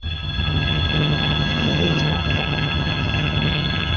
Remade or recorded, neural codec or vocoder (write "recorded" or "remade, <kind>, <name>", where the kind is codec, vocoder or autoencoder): remade, vocoder, HiFi-GAN